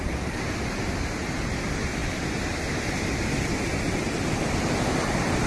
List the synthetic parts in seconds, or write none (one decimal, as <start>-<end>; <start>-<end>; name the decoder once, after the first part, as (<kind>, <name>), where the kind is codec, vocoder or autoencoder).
none